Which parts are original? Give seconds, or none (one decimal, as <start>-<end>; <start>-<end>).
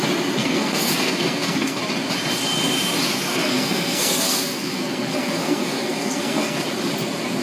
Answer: 0.0-0.4; 1.8-3.3; 6.6-7.4